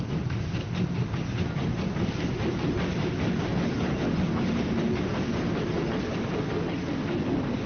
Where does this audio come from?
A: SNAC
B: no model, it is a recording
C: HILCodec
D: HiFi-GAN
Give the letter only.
B